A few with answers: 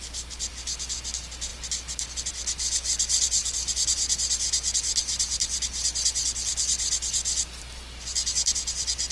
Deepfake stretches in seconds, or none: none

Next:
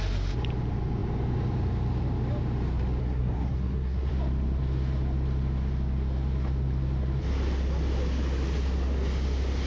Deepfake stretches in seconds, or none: 3.0-4.1 (codec, SNAC)

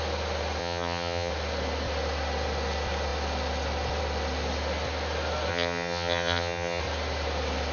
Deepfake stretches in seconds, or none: 0.6-1.3 (vocoder, HiFi-GAN); 5.5-6.8